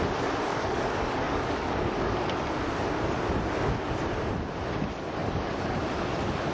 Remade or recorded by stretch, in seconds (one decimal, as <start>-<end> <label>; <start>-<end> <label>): 0.0-0.5 recorded; 0.5-2.5 remade; 2.5-5.2 recorded; 5.2-5.8 remade; 5.8-6.5 recorded